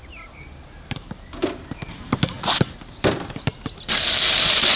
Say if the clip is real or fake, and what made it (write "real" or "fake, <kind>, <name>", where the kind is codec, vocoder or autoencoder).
real